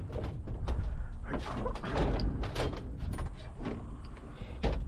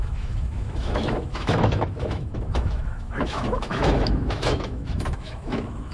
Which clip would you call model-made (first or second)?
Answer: second